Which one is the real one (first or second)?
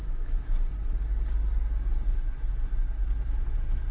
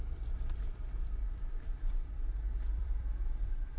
first